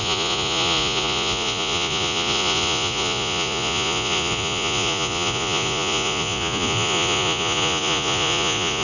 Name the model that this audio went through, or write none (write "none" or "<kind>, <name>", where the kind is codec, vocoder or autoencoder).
vocoder, Vocos